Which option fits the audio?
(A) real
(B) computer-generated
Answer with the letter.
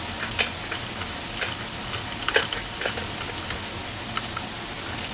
A